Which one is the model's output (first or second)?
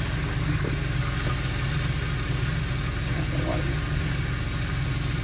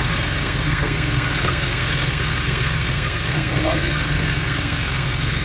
second